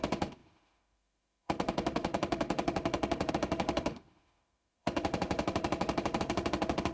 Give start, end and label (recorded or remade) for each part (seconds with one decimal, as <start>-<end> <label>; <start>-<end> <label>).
0.0-6.9 remade